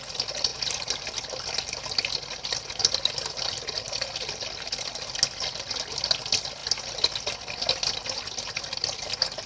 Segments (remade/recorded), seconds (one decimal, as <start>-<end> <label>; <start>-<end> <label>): 0.0-9.5 recorded